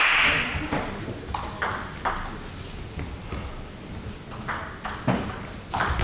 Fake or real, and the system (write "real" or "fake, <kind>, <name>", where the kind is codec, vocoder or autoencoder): real